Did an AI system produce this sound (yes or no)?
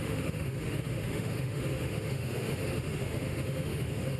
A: yes